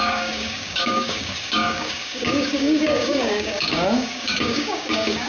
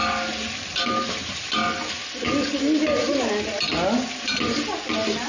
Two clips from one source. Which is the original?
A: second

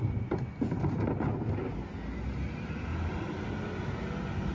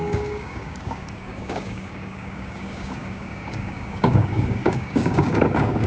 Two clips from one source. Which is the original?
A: first